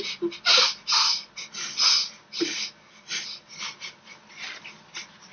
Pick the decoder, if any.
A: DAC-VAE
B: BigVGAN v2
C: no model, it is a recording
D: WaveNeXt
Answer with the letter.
C